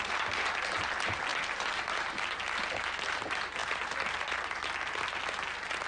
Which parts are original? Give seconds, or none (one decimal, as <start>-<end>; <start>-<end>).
0.0-5.9